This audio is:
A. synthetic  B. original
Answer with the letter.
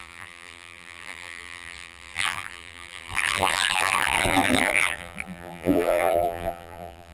A